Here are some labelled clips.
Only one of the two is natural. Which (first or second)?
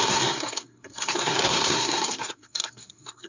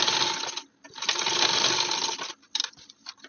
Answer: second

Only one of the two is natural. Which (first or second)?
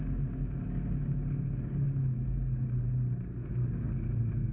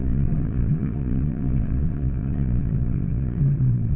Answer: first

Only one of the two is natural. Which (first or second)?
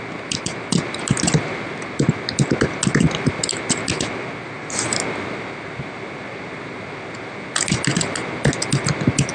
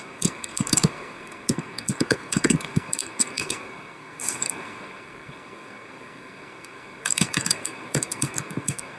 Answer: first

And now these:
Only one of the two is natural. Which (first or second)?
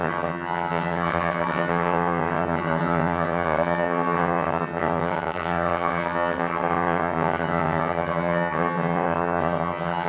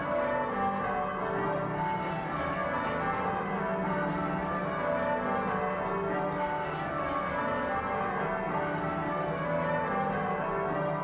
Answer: second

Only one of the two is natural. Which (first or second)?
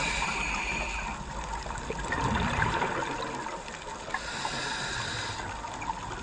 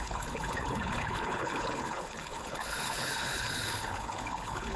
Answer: first